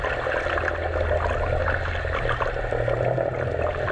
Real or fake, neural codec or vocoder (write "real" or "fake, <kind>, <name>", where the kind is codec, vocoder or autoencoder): real